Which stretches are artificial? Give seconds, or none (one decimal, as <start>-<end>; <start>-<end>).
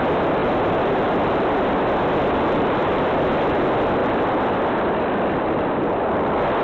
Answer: 2.8-3.6; 4.0-5.7